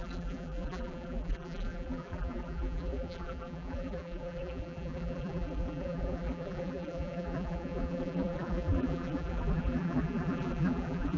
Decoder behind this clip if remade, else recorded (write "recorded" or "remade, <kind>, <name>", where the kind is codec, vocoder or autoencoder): remade, vocoder, BigVGAN v2